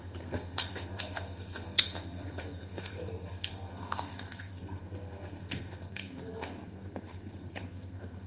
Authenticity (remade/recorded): remade